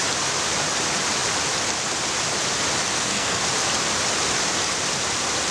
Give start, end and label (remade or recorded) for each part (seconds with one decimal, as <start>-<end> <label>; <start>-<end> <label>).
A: 0.0-2.9 recorded; 2.9-3.4 remade; 3.4-5.5 recorded